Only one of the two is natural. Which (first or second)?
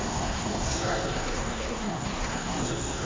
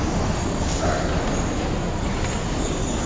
second